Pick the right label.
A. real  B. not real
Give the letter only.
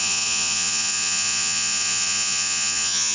B